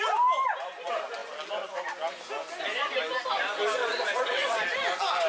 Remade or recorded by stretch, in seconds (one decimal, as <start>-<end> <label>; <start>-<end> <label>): 0.0-3.8 recorded; 3.8-4.6 remade; 4.6-5.3 recorded